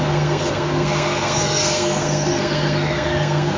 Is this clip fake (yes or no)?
yes